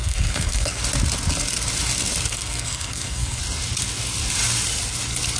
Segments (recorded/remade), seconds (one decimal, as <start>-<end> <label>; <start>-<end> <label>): 0.0-0.8 remade; 0.8-2.3 recorded; 2.3-3.4 remade; 3.4-5.4 recorded